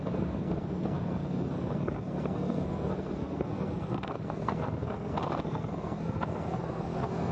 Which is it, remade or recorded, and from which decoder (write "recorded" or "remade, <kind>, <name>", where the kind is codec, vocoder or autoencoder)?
remade, codec, SNAC